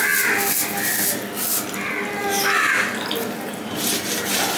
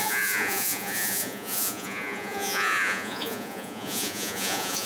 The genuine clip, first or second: first